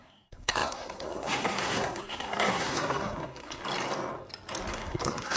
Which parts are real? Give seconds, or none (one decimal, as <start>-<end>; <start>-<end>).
3.6-4.7